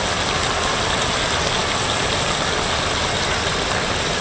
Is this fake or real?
real